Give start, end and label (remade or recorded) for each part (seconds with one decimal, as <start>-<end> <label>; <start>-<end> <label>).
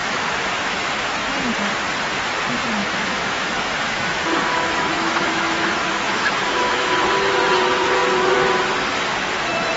0.0-1.4 remade; 1.4-2.8 recorded; 2.8-6.9 remade; 6.9-9.8 recorded